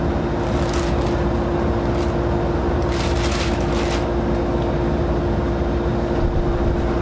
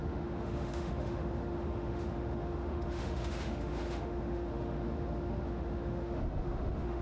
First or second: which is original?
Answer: first